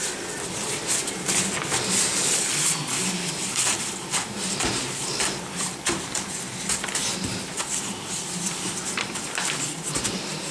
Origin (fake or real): real